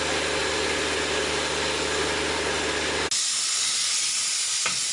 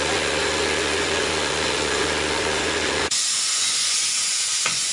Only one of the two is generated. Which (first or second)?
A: second